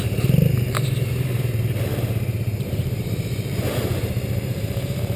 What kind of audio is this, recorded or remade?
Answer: remade